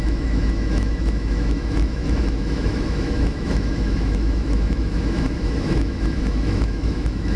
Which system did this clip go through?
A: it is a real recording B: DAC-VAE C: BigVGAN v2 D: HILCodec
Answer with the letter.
B